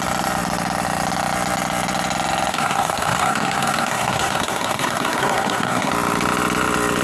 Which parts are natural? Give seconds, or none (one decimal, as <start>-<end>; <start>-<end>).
0.0-2.5; 5.9-7.0